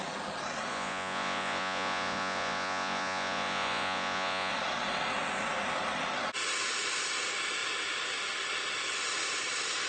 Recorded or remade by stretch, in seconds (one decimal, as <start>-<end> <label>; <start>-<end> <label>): 0.0-0.7 recorded; 0.7-4.5 remade; 4.5-9.9 recorded